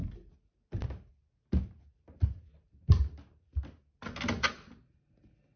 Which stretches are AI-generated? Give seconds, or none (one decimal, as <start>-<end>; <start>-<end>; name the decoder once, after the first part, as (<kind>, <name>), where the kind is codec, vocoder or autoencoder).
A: none

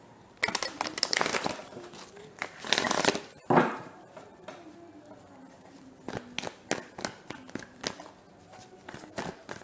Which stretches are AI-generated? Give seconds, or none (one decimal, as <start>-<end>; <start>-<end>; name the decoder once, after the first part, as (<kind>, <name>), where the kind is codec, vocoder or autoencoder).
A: 1.3-4.7 (vocoder, BigVGAN v2)

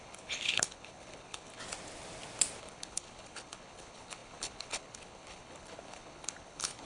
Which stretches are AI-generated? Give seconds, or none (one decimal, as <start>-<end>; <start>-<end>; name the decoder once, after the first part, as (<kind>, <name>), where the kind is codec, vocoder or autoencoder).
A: 0.0-1.6 (codec, HILCodec); 2.6-6.9